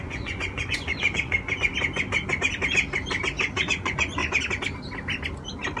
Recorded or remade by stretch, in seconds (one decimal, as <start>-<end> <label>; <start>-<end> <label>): 0.0-1.7 remade; 1.7-3.6 recorded; 3.6-4.2 remade; 4.2-5.8 recorded